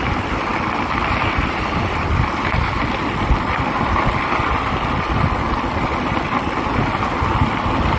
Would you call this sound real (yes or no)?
yes